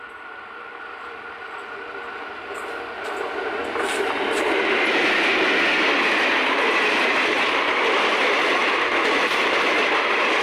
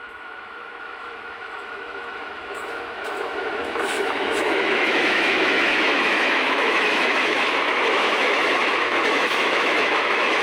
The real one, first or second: first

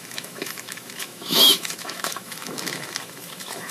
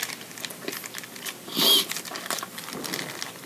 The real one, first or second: second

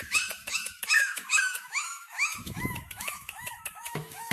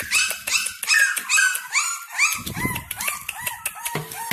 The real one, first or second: second